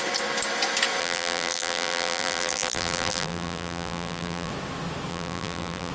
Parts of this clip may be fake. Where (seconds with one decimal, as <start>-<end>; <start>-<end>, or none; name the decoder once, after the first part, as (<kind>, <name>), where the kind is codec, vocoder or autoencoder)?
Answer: 1.0-4.5 (vocoder, BigVGAN v2); 5.1-5.9